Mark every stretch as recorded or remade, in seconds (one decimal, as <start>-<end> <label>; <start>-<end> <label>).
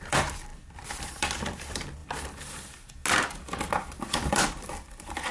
0.0-2.0 remade; 2.0-4.3 recorded; 4.3-5.3 remade